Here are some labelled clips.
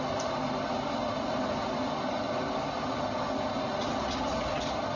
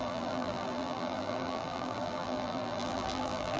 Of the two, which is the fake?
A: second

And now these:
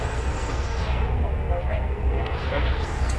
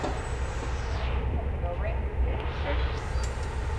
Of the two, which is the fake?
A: first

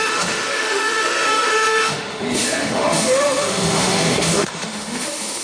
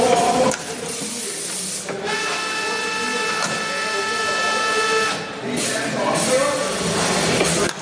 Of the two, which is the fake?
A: first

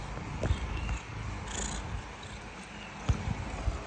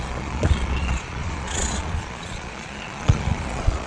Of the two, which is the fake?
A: second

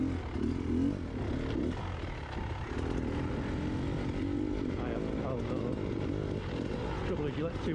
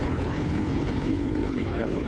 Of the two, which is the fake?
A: second